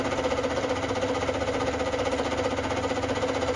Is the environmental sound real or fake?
real